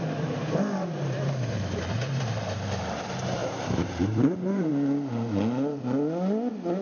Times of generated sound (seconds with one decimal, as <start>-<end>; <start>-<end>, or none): 3.4-4.7